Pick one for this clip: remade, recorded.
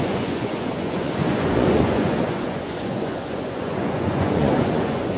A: remade